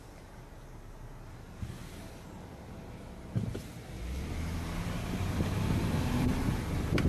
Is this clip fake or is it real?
real